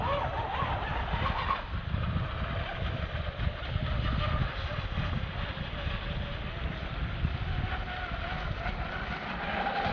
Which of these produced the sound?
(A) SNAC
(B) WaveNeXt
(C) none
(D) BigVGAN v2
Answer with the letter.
C